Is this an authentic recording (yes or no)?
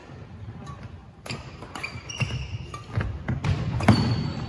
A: yes